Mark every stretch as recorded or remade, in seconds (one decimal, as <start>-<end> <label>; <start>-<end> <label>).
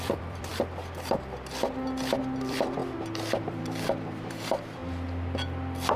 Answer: 0.0-0.5 remade; 0.5-2.2 recorded; 2.2-2.8 remade; 2.8-3.4 recorded; 3.4-4.8 remade; 4.8-6.0 recorded